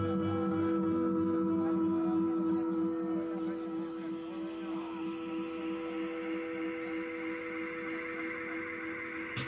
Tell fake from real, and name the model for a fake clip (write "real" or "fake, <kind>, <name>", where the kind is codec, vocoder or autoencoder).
real